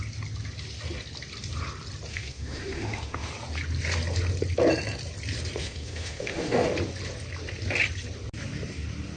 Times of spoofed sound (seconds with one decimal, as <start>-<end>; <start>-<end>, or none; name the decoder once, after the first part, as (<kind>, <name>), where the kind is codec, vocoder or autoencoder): 2.1-3.3 (autoencoder, DAC-VAE); 5.6-6.7